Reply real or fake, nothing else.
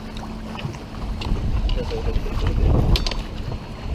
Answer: real